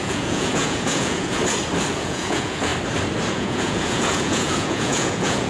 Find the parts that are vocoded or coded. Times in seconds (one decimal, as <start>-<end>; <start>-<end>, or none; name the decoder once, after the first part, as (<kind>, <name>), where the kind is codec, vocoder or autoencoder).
0.0-1.4 (vocoder, Vocos); 1.9-2.7; 3.3-5.5